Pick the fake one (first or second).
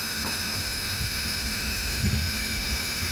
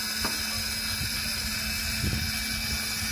first